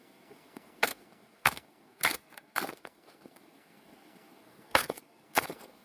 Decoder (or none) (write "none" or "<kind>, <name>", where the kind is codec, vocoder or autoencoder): codec, SNAC